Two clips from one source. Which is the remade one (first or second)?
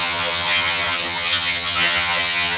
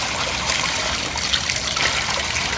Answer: first